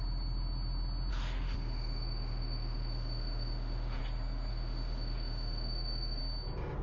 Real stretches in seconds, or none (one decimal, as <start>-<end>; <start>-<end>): 0.0-1.1; 4.0-4.5; 6.2-6.8